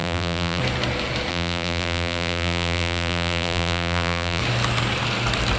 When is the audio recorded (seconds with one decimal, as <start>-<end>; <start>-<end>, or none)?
0.6-1.3; 4.4-5.6